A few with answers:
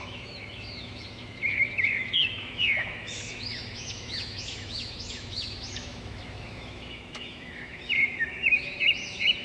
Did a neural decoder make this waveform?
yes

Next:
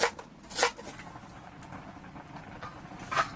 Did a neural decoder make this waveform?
no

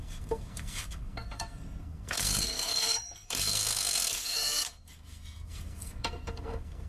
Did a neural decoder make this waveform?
yes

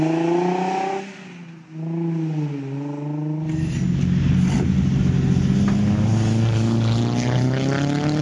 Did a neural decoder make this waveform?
no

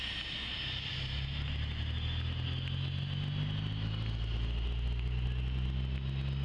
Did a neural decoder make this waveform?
no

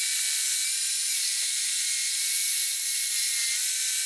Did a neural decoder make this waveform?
yes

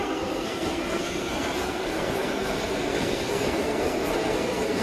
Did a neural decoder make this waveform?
yes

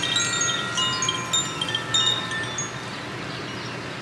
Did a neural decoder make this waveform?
no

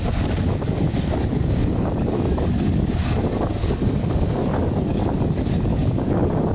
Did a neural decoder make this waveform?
yes